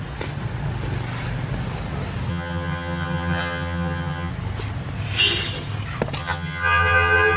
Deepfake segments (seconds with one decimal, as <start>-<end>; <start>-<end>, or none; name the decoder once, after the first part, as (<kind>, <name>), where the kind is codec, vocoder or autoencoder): 2.3-4.3 (vocoder, HiFi-GAN); 6.2-7.4